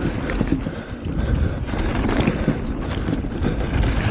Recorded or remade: recorded